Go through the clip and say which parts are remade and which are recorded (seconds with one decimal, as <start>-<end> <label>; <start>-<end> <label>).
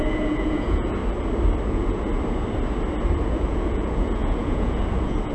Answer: 0.0-1.0 remade; 1.0-1.7 recorded; 1.7-2.1 remade; 2.1-3.2 recorded; 3.2-5.3 remade